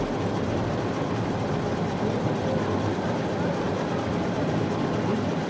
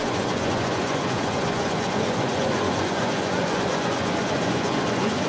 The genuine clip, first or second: first